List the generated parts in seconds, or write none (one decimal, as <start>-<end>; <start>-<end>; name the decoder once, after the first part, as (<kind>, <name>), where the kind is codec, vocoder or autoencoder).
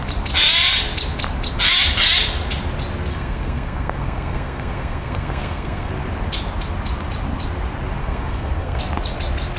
3.1-5.9 (codec, SNAC); 8.0-8.8